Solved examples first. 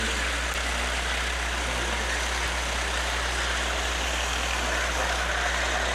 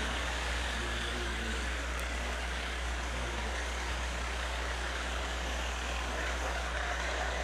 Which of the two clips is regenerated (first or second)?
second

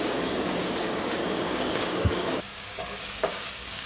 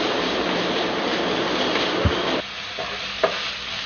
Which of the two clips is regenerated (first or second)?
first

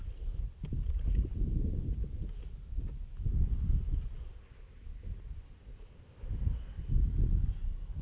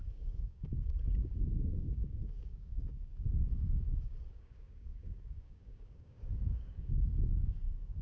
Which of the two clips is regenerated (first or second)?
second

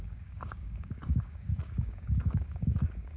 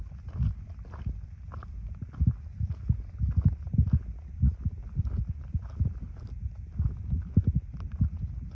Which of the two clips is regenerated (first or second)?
first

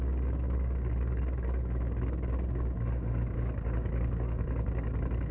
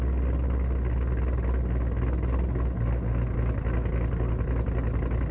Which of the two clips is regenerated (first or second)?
first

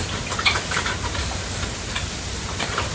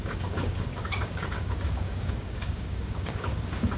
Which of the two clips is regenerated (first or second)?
second